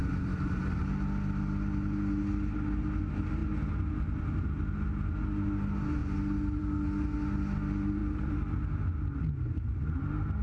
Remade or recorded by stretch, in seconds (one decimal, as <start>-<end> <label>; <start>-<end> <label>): 0.0-0.8 remade; 0.8-10.4 recorded